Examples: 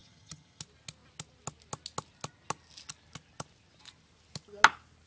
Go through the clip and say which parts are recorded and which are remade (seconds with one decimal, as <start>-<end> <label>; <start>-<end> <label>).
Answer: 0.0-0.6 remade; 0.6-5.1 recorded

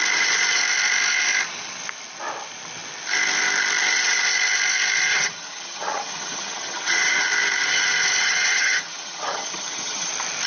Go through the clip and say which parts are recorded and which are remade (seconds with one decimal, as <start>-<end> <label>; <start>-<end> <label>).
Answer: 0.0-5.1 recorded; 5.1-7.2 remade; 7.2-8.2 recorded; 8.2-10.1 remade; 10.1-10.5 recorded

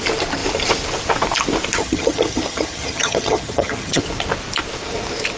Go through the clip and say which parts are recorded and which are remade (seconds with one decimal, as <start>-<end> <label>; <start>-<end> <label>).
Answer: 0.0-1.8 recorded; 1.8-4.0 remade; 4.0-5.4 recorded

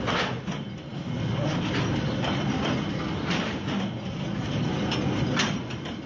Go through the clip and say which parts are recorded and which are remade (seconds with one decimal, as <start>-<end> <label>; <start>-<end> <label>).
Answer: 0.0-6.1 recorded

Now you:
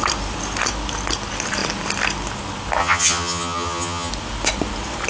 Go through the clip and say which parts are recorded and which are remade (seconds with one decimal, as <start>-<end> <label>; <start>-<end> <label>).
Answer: 0.0-2.8 recorded; 2.8-4.1 remade; 4.1-5.1 recorded